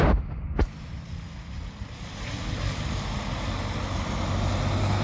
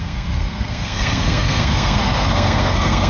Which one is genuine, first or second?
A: first